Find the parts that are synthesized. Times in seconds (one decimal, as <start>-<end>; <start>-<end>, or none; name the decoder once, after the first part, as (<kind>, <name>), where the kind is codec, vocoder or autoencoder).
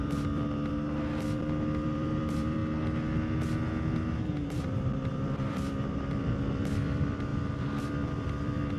0.0-2.6 (vocoder, BigVGAN v2); 5.1-7.3; 7.8-8.8